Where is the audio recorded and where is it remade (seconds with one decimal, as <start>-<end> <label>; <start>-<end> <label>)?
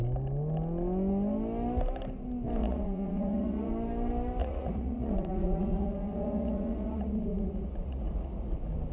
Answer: 0.0-2.6 recorded; 2.6-3.7 remade; 3.7-4.4 recorded; 4.4-8.5 remade; 8.5-8.9 recorded